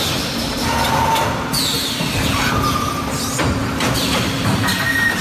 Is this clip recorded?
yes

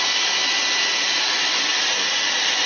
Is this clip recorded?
yes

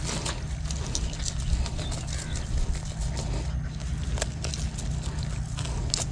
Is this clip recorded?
yes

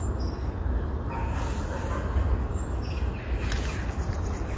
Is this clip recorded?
yes